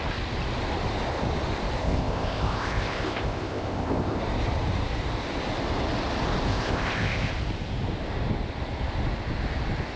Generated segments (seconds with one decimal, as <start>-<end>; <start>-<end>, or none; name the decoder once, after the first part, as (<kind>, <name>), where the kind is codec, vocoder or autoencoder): 1.8-4.2 (codec, ZipCodec); 6.5-7.3